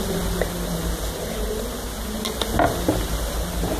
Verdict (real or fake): real